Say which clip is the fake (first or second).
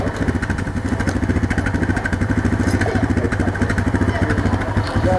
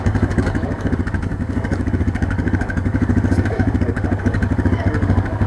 second